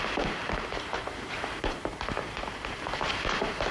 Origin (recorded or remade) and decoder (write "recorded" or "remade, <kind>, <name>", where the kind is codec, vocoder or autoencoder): remade, vocoder, BigVGAN v2